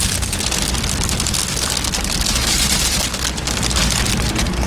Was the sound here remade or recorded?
recorded